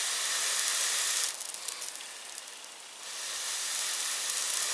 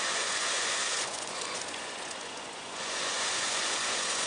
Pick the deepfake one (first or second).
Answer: second